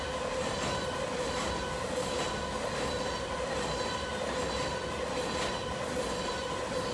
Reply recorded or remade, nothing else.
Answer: recorded